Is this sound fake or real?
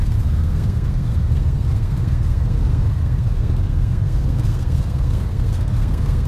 fake